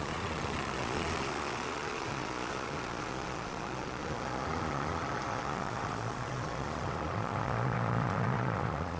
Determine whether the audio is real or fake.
fake